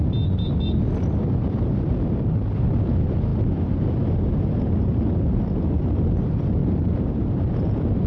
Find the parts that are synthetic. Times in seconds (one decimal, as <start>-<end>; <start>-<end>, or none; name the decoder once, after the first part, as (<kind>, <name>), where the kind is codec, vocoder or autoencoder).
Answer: 6.6-7.5 (vocoder, BigVGAN v2)